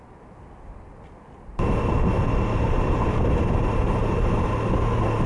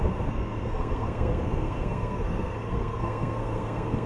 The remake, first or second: second